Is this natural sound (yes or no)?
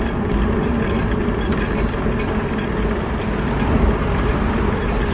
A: yes